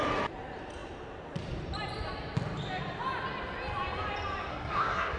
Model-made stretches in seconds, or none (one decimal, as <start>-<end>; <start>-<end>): 4.5-5.2